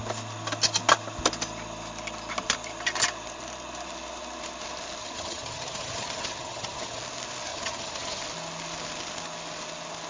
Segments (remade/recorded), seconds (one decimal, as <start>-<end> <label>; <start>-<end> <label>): 0.0-5.0 recorded; 5.0-7.0 remade; 7.0-7.5 recorded; 7.5-8.2 remade; 8.2-10.1 recorded